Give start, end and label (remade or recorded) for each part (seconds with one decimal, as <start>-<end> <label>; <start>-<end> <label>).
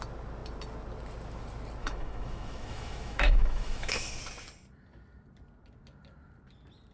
0.0-1.8 recorded; 1.8-4.2 remade; 4.2-6.9 recorded